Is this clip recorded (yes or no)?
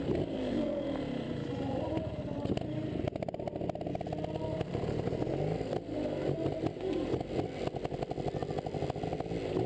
yes